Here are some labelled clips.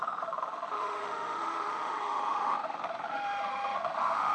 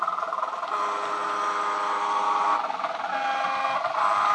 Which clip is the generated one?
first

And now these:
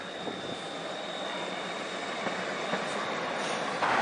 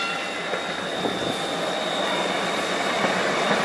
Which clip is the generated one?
first